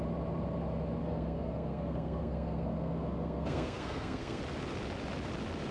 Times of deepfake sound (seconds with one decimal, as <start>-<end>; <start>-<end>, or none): 1.0-4.4